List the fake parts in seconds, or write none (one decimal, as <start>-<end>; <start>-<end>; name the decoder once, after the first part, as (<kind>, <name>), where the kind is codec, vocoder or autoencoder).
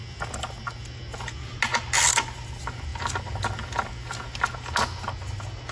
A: none